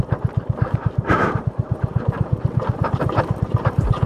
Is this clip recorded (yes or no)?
no